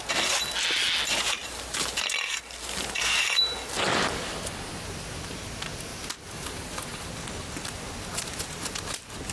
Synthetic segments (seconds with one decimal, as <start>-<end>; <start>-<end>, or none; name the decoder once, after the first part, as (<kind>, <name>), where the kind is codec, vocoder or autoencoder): none